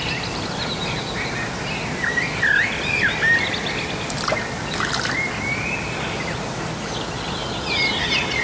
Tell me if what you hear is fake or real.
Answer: real